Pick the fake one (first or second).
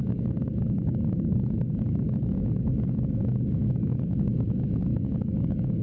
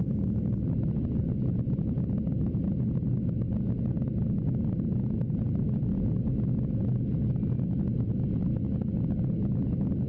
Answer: first